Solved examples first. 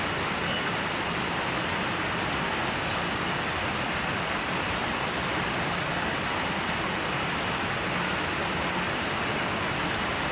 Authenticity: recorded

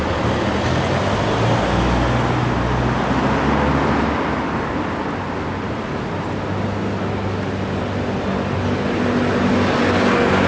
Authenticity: recorded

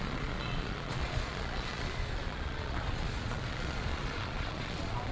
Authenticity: remade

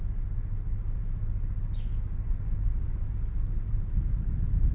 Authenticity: recorded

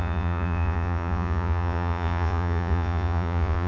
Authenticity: remade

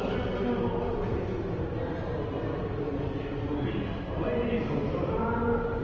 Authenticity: recorded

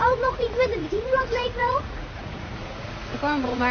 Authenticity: remade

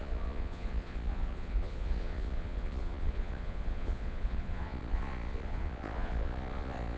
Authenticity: remade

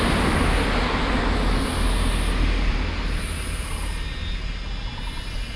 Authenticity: recorded